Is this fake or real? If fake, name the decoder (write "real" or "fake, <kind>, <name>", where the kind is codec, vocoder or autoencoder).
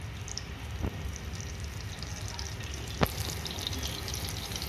real